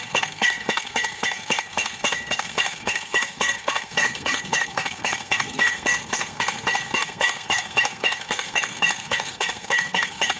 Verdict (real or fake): fake